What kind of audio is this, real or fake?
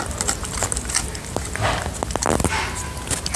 real